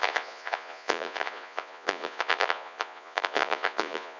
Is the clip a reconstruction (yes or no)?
yes